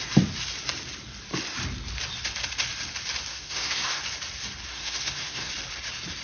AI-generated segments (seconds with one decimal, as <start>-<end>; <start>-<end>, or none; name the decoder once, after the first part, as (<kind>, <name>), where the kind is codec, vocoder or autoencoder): 3.3-4.0 (codec, SNAC); 4.7-5.5